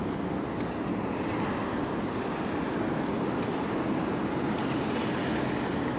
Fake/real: real